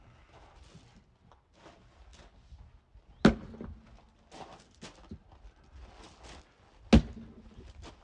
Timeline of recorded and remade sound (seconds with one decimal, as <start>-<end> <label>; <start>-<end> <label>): 0.0-8.0 recorded